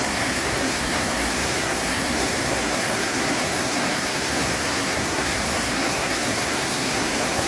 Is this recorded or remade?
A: remade